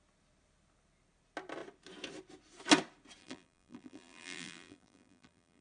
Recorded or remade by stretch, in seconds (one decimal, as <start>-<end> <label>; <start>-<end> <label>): 0.0-3.2 recorded; 3.2-5.6 remade